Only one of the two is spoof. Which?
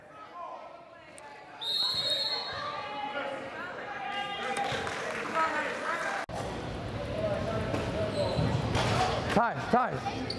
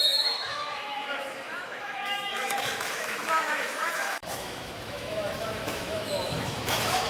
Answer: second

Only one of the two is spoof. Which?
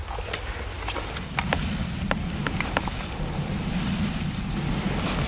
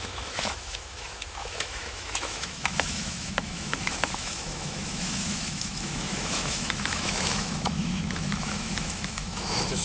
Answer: second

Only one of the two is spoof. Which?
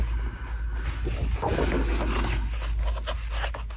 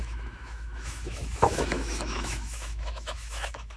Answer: second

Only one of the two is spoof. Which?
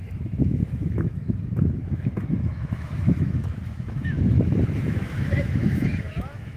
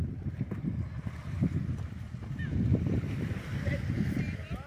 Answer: first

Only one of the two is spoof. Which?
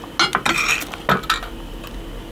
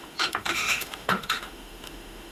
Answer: second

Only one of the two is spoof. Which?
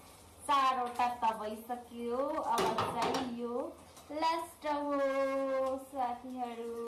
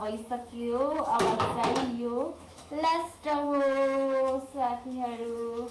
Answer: second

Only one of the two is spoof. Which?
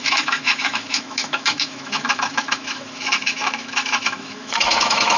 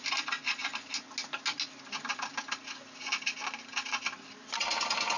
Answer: first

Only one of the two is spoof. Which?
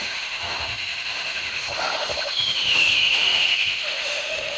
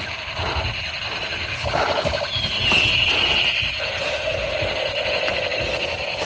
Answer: first